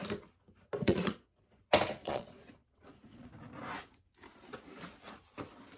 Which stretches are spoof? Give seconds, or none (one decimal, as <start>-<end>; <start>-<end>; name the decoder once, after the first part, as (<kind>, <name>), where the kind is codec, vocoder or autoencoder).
0.8-1.6 (vocoder, Vocos); 2.0-3.3